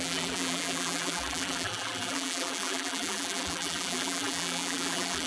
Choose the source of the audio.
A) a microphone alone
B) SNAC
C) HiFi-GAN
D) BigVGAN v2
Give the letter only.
D